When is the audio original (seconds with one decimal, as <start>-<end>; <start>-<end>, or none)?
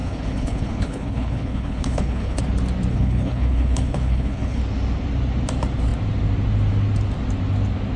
2.4-2.9; 4.6-8.0